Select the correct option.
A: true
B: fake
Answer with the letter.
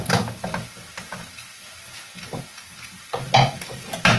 A